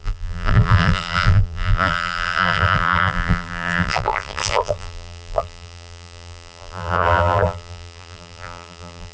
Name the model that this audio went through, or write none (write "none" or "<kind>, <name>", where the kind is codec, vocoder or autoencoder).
vocoder, BigVGAN v2